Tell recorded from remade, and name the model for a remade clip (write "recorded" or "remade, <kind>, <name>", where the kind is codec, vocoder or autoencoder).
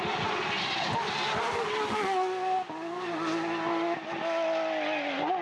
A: recorded